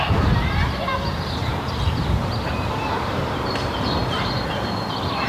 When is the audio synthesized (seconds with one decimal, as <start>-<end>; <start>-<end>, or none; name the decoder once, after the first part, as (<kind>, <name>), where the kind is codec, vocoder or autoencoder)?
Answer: 1.5-3.5 (vocoder, BigVGAN v2); 4.0-4.7